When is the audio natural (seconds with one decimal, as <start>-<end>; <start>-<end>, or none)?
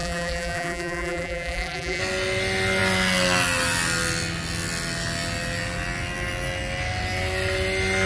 2.0-8.1